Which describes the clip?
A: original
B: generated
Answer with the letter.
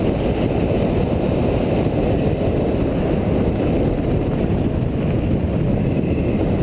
A